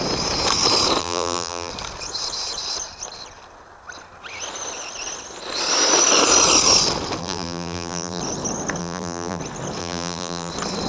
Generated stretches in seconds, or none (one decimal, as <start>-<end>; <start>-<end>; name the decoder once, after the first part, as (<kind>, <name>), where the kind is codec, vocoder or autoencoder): 1.0-1.7 (vocoder, BigVGAN v2); 7.2-8.2; 8.8-9.4; 9.8-10.5